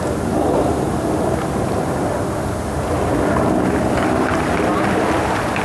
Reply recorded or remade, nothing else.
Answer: recorded